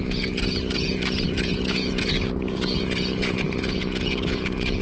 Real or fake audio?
fake